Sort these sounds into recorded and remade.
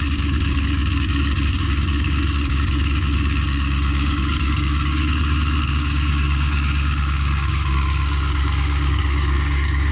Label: remade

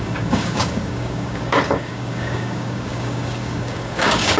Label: remade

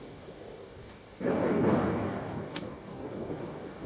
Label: remade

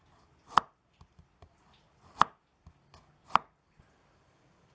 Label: recorded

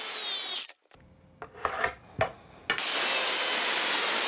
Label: recorded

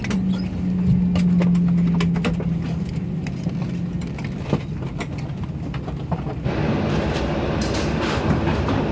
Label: recorded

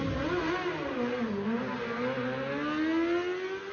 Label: recorded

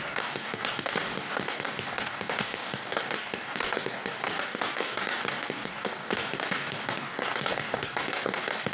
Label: remade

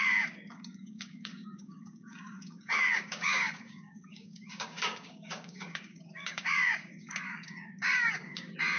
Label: remade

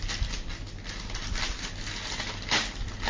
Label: recorded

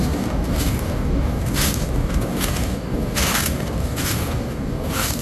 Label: remade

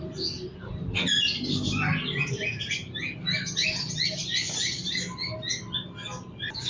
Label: recorded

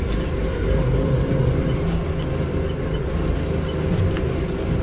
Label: recorded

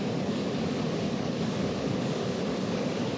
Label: remade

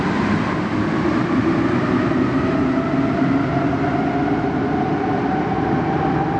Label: recorded